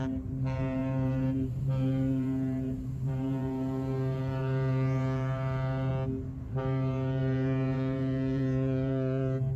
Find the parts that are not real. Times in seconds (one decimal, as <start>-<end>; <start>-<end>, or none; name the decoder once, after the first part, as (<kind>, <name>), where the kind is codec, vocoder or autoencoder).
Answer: 0.0-5.9 (vocoder, BigVGAN v2); 6.6-9.6